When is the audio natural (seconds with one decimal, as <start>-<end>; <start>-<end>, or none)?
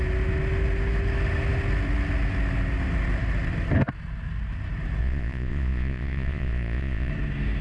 0.0-5.0; 7.1-7.6